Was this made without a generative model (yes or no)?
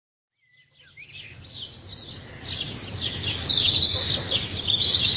yes